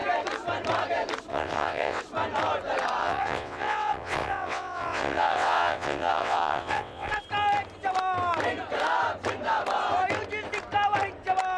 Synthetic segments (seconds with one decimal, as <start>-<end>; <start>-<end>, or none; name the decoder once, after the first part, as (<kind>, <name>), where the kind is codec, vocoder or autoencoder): 1.3-2.0 (vocoder, WaveNeXt); 3.0-7.1